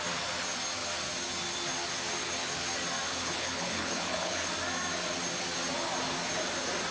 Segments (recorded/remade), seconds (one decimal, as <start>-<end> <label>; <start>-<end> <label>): 0.0-3.1 recorded; 3.1-4.5 remade; 4.5-6.9 recorded

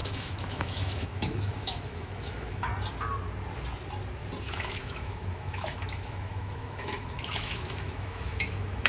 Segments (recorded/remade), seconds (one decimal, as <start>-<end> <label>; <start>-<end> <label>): 0.0-2.7 remade; 2.7-4.4 recorded; 4.4-8.9 remade

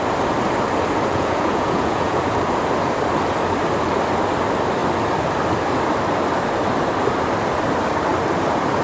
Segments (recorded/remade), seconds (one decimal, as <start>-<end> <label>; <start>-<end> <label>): 0.0-1.1 recorded; 1.1-2.2 remade; 2.2-8.8 recorded